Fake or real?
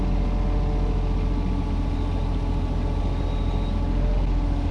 real